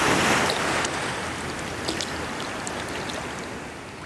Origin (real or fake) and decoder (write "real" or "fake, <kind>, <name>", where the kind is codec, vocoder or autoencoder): real